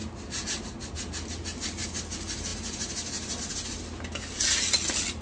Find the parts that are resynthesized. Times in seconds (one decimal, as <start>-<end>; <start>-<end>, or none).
0.0-0.9